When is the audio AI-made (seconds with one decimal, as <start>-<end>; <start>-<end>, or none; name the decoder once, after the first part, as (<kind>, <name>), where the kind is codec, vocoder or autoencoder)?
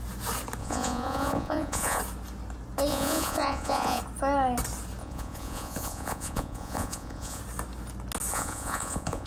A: 0.6-2.0 (vocoder, Vocos); 2.9-4.0; 5.0-7.4; 8.3-9.3